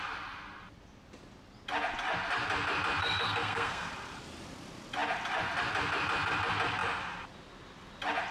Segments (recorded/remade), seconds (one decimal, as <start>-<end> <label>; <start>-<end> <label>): 0.0-3.0 recorded; 3.0-3.9 remade; 3.9-8.3 recorded